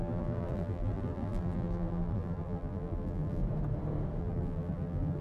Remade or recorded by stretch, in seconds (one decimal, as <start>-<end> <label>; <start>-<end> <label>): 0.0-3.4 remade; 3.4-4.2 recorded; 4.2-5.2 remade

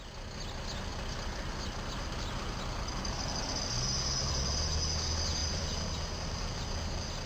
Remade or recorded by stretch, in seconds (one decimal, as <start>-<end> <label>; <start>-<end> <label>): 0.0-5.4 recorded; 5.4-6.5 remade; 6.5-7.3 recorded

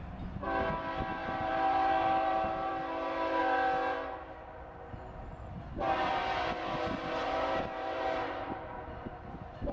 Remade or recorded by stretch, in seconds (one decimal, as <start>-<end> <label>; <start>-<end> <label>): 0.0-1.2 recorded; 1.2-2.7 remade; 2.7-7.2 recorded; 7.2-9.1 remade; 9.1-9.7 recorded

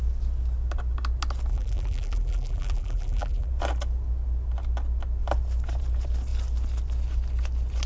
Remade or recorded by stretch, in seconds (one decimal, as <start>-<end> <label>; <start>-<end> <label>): 0.0-1.5 recorded; 1.5-3.5 remade; 3.5-7.9 recorded

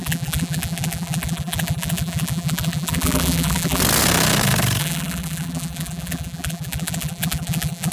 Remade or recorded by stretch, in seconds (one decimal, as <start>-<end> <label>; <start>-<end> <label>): 0.0-3.8 remade; 3.8-4.8 recorded; 4.8-7.9 remade

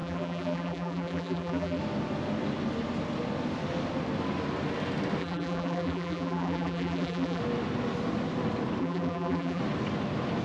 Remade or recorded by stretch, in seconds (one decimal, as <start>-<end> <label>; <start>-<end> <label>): 0.0-1.8 remade; 1.8-5.2 recorded; 5.2-7.4 remade; 7.4-8.8 recorded; 8.8-9.6 remade; 9.6-10.4 recorded